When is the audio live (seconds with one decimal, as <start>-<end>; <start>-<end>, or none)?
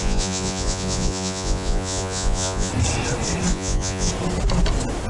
2.7-3.5; 4.1-5.1